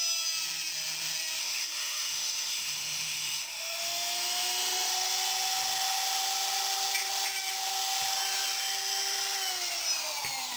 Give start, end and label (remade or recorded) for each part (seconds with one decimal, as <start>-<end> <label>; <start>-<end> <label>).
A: 0.0-1.4 recorded; 1.4-4.9 remade; 4.9-10.6 recorded